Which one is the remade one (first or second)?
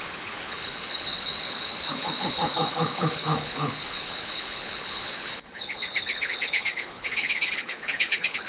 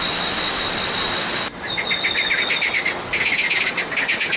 first